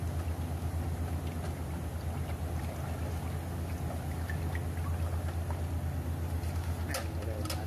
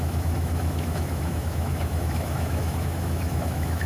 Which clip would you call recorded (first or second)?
first